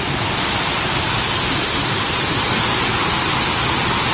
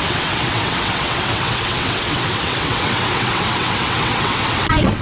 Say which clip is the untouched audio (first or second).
first